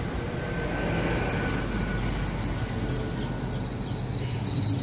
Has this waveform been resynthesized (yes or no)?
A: no